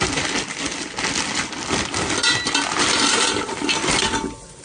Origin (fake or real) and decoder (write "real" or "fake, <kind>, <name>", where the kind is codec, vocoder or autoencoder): real